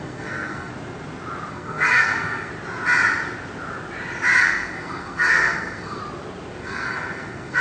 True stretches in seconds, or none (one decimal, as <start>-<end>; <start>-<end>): 0.7-1.5; 2.5-4.4; 6.0-6.6